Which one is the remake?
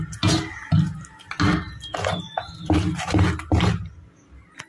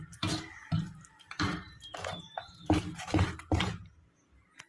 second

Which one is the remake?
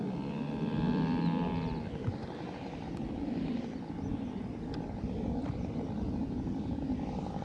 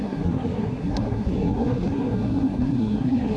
second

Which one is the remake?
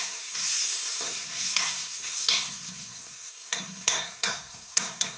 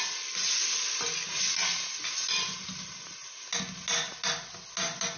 first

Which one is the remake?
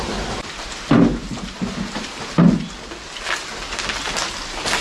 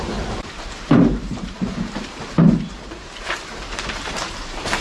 second